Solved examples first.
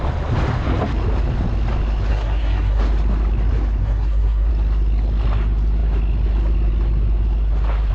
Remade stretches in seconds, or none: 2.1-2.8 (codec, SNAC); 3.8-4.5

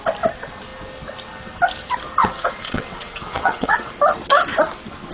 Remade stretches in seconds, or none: 2.2-3.9 (vocoder, WaveNeXt)

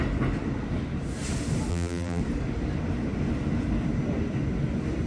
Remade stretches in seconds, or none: 1.7-2.2 (vocoder, BigVGAN v2)

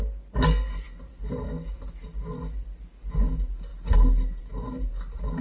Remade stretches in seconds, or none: none

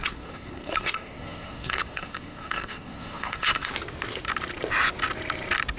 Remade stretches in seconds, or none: 0.0-3.7 (codec, SNAC)

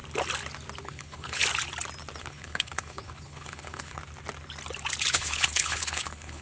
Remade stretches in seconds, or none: 0.8-1.4 (codec, HILCodec); 2.2-4.0; 5.1-6.4

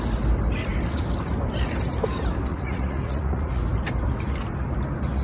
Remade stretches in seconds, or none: 2.5-3.6 (vocoder, Vocos)